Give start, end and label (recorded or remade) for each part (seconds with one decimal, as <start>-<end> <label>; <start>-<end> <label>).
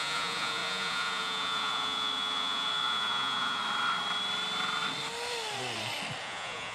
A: 0.0-3.6 remade; 3.6-6.2 recorded; 6.2-6.7 remade